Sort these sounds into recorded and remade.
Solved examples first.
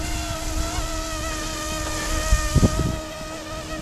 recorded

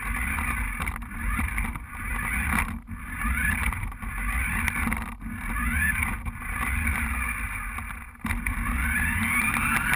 recorded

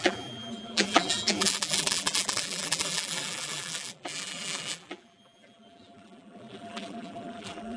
remade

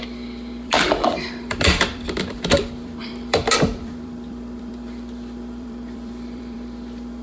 remade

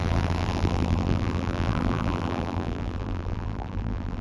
remade